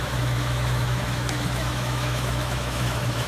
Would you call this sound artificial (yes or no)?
yes